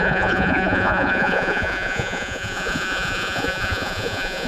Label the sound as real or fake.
fake